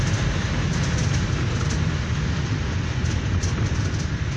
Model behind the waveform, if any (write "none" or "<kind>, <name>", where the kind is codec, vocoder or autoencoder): none